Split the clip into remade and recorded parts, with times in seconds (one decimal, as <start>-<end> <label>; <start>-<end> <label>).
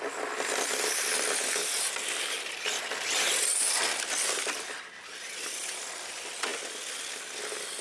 0.0-7.8 recorded